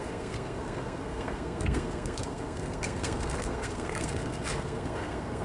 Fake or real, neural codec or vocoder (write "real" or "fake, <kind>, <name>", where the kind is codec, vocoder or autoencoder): fake, codec, SNAC